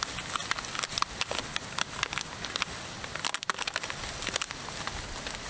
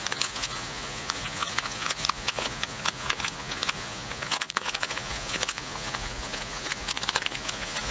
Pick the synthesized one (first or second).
second